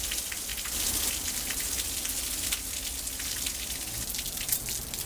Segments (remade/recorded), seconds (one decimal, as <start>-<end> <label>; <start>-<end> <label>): 0.0-5.1 recorded